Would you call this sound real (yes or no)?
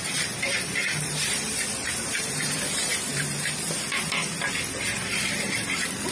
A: no